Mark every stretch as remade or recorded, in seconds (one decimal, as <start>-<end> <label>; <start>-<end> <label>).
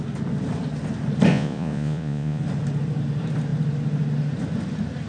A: 0.0-1.3 recorded; 1.3-2.4 remade; 2.4-5.1 recorded